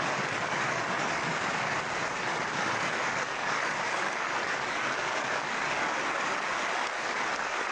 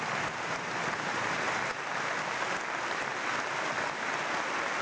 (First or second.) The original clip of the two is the second